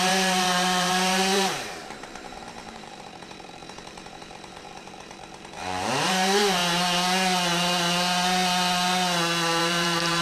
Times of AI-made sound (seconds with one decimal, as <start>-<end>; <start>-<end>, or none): 0.0-6.6; 9.6-10.2